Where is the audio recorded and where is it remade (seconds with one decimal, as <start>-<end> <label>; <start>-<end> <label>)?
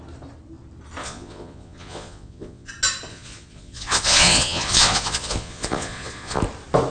0.0-1.0 recorded; 1.0-2.7 remade; 2.7-3.1 recorded; 3.1-6.4 remade; 6.4-6.9 recorded